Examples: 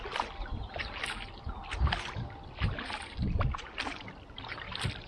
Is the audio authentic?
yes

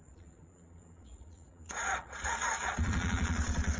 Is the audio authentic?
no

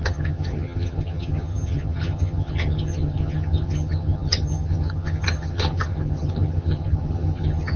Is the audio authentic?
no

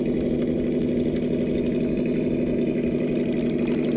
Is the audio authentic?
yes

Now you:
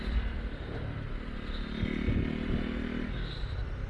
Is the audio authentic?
yes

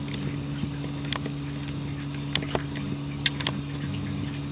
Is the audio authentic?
yes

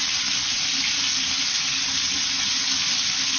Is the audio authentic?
yes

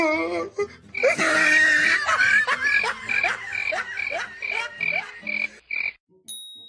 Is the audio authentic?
yes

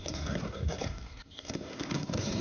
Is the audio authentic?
no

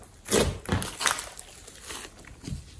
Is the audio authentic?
yes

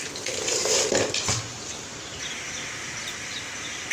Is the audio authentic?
yes